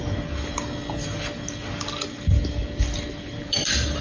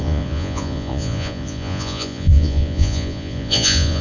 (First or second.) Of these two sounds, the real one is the first